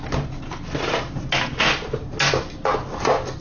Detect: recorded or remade recorded